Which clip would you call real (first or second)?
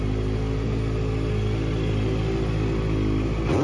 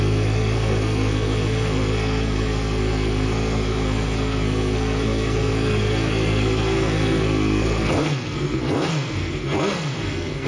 first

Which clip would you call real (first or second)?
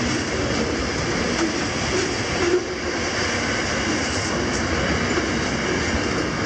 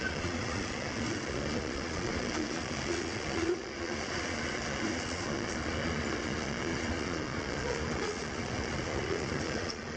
first